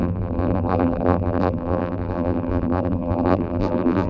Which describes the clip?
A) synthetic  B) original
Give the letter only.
A